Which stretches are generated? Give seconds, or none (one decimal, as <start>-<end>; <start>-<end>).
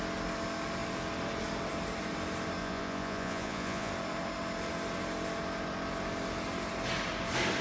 2.6-3.9